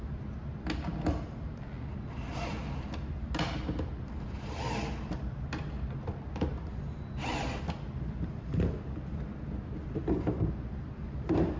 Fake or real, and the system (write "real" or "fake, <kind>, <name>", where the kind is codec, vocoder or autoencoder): real